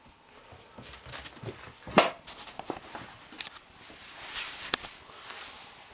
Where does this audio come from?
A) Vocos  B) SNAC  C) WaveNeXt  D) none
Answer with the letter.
D